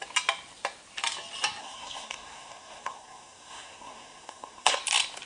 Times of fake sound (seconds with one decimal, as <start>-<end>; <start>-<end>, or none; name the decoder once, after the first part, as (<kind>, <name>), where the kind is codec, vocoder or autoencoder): 1.6-4.8 (codec, SNAC)

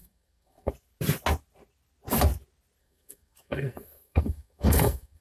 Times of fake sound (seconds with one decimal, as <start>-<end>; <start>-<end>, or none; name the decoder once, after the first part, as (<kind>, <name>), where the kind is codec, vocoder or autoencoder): 0.0-0.7 (codec, SNAC); 2.8-5.2